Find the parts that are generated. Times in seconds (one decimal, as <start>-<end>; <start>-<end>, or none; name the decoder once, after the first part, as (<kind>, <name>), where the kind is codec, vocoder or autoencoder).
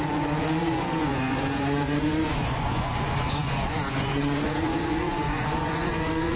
0.0-6.4 (vocoder, Vocos)